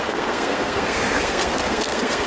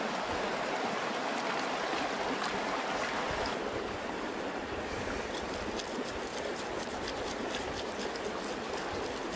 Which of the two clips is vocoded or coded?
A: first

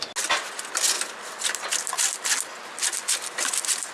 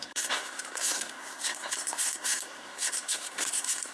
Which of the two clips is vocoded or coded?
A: second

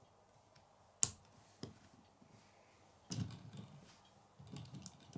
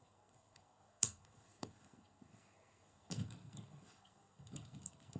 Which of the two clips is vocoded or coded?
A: second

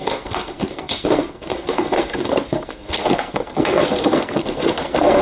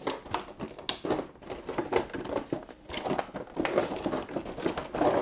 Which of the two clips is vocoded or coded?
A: first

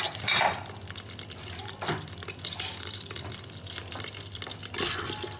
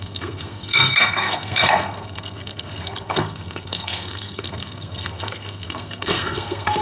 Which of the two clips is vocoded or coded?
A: second